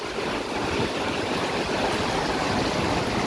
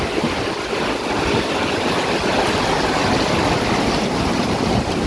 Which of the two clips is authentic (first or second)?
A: second